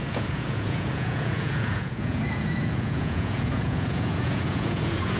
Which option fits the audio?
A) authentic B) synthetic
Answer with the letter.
B